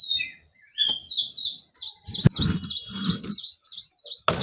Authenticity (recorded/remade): recorded